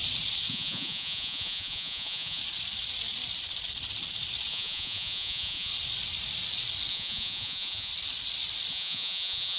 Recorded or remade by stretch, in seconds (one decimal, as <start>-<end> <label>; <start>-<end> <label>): 0.0-0.5 recorded; 0.5-2.4 remade; 2.4-4.5 recorded; 4.5-5.7 remade; 5.7-6.9 recorded; 6.9-7.9 remade; 7.9-8.7 recorded; 8.7-9.6 remade